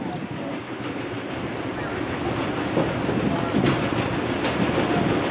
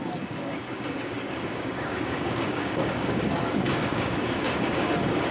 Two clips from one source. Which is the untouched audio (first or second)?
first